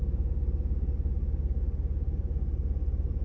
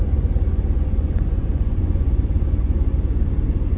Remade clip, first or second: second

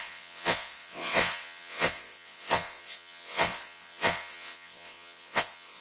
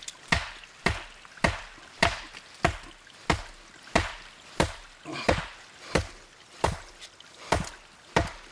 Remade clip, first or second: first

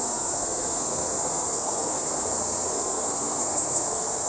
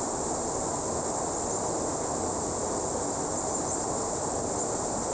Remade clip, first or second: first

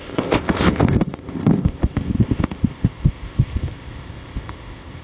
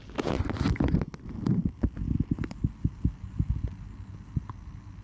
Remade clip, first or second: first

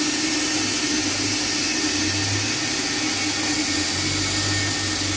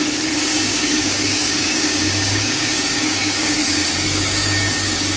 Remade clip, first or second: second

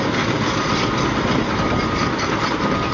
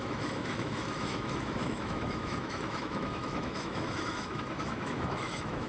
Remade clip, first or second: second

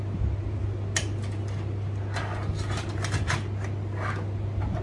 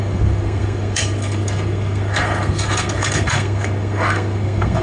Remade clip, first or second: second